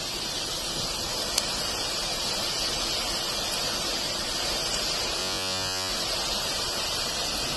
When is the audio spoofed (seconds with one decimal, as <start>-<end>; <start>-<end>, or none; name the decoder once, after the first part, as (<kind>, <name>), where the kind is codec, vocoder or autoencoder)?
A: 5.2-5.9 (vocoder, Vocos)